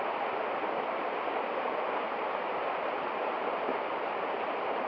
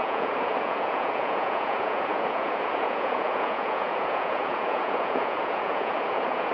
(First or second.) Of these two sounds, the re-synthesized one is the second